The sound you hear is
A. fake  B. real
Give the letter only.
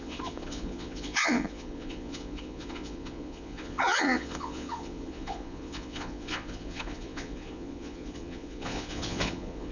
A